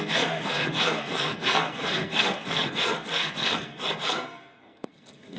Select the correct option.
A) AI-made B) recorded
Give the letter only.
A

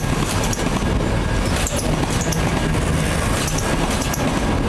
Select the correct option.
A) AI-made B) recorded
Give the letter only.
B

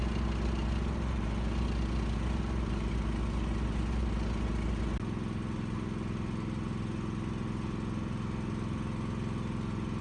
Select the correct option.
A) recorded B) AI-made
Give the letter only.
A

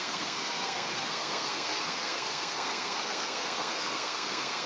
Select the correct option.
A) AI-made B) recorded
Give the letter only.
A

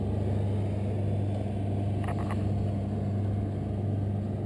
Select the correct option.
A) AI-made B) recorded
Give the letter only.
B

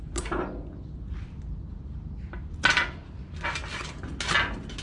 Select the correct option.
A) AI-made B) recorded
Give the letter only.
B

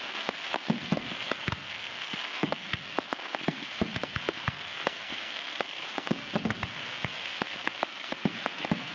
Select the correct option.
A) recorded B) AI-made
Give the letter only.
B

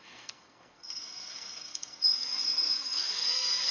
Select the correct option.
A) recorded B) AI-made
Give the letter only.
B